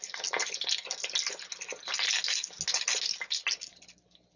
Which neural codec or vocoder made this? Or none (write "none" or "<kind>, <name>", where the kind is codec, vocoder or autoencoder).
none